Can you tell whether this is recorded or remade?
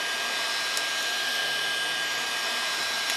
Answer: recorded